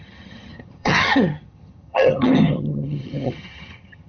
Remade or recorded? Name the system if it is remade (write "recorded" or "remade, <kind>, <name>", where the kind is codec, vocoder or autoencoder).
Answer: remade, vocoder, HiFi-GAN